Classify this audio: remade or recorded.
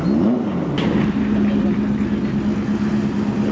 recorded